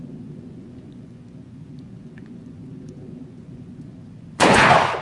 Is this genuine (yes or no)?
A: no